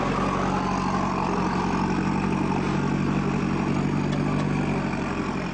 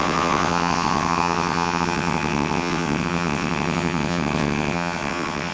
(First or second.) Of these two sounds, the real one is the first